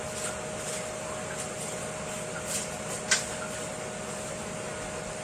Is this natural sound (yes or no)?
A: yes